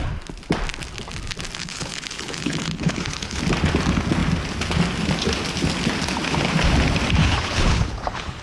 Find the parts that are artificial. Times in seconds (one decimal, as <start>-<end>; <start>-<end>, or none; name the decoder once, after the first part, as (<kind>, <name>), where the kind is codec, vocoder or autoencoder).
1.6-3.4 (codec, HILCodec); 7.2-8.4